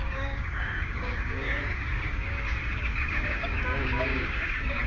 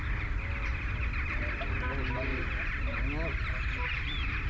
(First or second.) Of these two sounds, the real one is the second